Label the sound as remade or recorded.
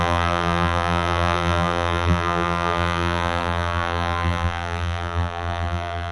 remade